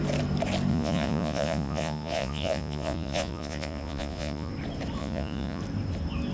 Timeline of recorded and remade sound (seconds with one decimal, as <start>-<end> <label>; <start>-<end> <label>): 0.0-0.7 recorded; 0.7-4.5 remade; 4.5-5.0 recorded; 5.0-5.6 remade; 5.6-6.3 recorded